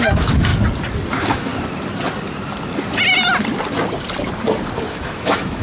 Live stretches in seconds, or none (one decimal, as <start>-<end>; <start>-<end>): 0.5-1.1; 1.5-4.9